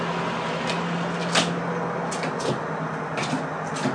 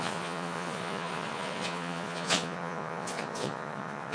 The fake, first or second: second